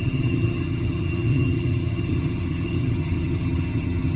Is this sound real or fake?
fake